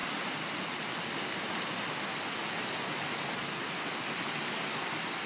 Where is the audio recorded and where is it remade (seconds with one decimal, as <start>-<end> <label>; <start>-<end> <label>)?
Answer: 0.0-5.3 recorded